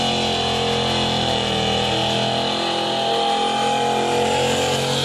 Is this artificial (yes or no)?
no